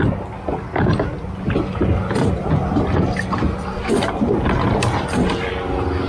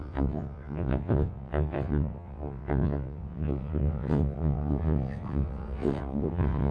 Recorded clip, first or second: first